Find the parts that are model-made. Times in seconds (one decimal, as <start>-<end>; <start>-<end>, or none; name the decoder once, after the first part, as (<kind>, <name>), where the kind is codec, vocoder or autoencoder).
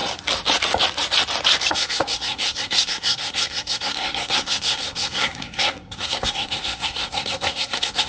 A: 1.7-8.1 (codec, SNAC)